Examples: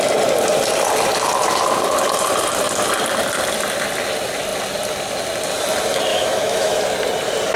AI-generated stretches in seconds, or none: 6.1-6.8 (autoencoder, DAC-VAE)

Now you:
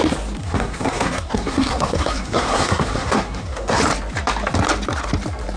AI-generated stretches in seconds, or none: 0.4-3.8 (codec, SNAC)